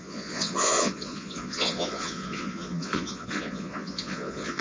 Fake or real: fake